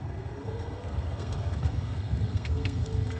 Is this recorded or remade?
remade